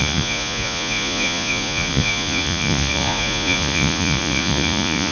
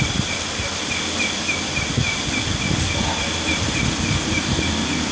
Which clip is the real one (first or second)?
second